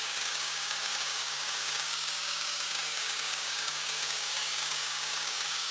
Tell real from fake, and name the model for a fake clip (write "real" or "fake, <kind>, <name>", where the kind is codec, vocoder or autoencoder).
fake, codec, DAC